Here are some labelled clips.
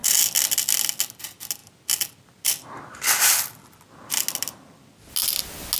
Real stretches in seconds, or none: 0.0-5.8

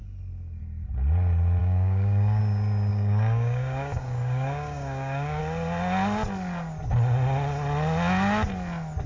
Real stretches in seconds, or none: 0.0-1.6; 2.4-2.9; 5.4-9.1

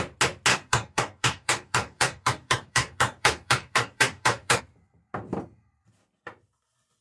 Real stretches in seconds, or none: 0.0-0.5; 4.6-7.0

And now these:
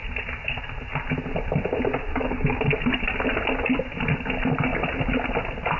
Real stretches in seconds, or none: 0.0-1.9; 2.6-5.8

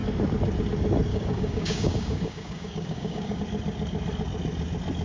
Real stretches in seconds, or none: 0.0-1.1; 3.4-5.0

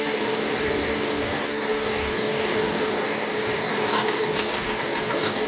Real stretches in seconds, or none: none